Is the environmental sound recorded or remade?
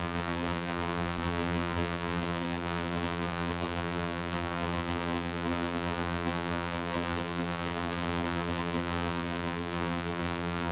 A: remade